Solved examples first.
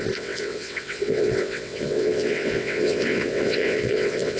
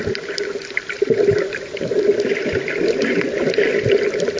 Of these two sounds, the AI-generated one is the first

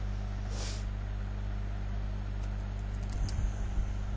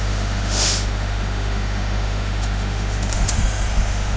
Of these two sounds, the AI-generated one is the second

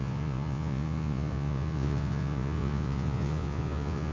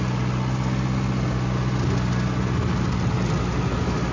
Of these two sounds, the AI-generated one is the first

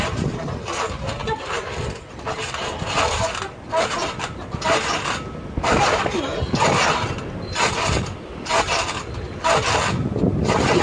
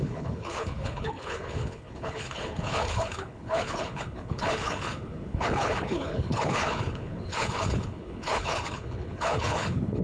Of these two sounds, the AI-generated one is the second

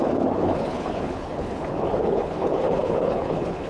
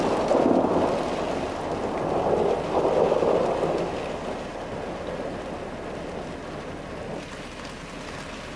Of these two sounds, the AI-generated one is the first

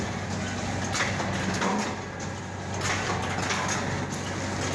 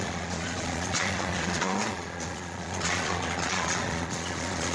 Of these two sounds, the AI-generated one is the second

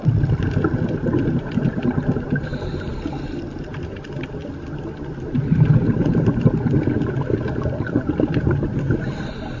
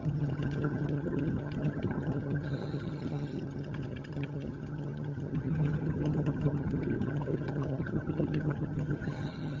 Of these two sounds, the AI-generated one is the second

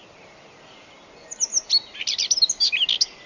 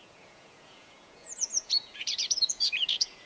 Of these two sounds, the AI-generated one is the second